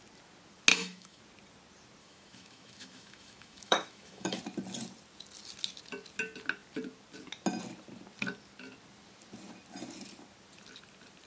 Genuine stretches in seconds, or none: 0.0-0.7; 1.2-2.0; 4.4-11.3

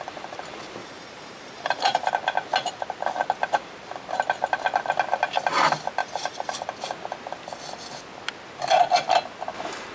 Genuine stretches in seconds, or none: 0.0-0.8; 2.1-6.0; 6.6-9.9

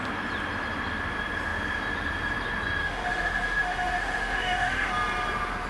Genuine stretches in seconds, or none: 0.0-2.8; 4.9-5.7

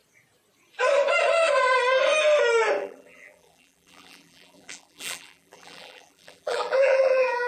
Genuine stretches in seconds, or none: 0.0-2.8

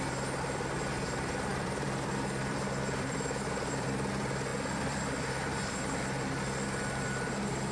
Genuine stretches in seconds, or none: 0.0-1.5; 4.1-4.5; 5.3-7.7

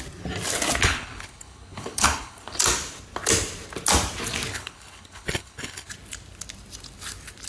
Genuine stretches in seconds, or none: 0.0-0.8; 2.6-4.5; 5.9-7.5

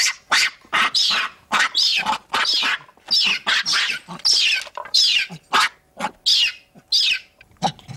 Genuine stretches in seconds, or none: 1.9-4.7; 5.2-7.2

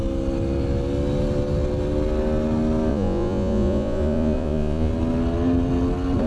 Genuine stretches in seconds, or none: 0.0-2.9; 4.9-6.3